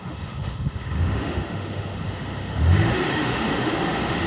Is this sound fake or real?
fake